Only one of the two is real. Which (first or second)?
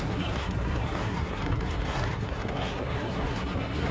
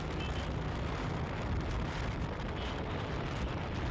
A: second